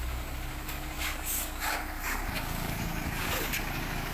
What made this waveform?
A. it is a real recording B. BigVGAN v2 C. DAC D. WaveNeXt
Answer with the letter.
C